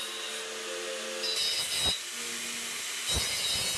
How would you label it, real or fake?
real